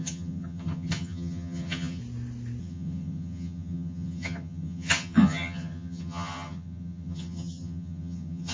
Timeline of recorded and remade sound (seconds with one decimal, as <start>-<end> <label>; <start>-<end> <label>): 0.0-2.0 remade; 2.0-2.6 recorded; 2.6-8.5 remade